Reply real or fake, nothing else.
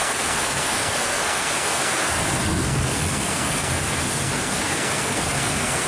fake